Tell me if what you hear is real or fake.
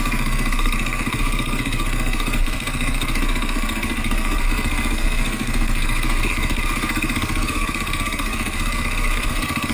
fake